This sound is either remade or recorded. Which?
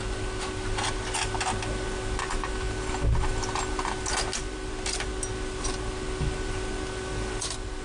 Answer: recorded